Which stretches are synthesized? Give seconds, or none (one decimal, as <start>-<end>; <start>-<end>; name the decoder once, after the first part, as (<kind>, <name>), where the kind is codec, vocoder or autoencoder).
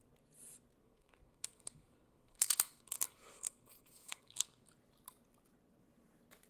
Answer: 0.8-4.7 (codec, SNAC)